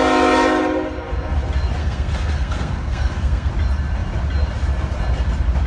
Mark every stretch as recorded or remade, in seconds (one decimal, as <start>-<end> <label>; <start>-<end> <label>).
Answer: 0.0-1.8 recorded; 1.8-3.5 remade; 3.5-5.7 recorded